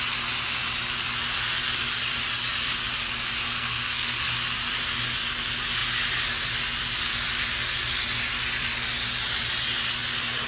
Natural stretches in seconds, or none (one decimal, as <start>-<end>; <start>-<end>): 0.0-3.4; 4.2-10.5